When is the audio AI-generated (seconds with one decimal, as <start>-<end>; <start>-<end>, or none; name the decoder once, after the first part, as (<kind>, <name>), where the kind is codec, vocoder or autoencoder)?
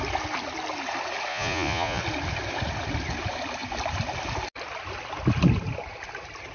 1.3-2.0 (vocoder, Vocos)